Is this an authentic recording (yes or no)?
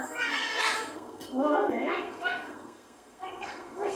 no